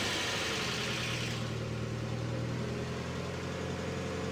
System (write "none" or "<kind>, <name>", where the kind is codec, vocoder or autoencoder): none